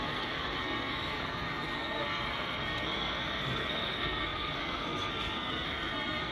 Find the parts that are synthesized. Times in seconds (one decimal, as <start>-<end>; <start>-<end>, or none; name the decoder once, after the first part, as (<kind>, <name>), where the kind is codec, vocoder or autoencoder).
0.0-6.3 (codec, SNAC)